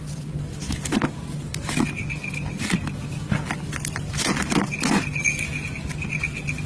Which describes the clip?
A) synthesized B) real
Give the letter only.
B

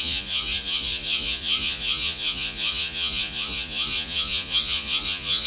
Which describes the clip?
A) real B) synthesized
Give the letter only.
B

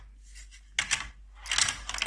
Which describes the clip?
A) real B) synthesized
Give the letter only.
A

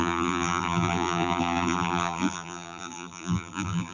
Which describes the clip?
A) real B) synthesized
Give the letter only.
B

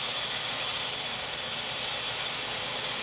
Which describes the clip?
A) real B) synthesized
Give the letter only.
A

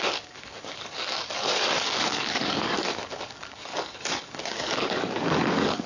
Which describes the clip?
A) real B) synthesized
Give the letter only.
B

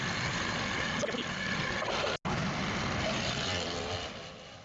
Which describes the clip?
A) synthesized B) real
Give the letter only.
B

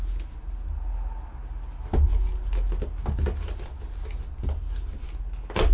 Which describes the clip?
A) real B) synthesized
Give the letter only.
A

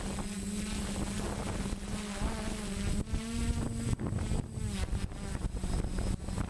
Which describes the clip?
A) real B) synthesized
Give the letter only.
A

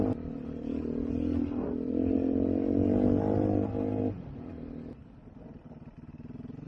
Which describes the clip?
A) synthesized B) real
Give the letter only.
B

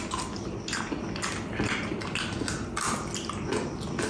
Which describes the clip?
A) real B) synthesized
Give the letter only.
A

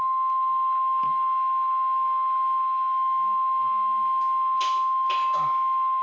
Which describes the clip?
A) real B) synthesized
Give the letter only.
A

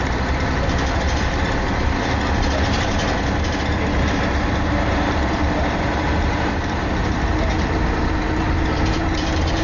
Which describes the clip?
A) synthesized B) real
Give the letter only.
A